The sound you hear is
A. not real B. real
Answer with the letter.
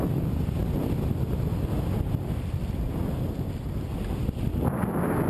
B